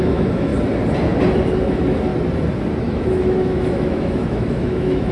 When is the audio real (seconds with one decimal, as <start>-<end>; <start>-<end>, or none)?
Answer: 0.5-1.6; 2.1-2.8